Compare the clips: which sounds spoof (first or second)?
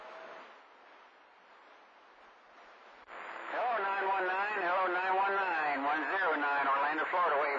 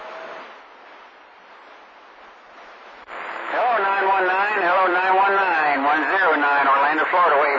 second